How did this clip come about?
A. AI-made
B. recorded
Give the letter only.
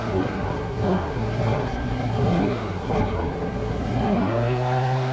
A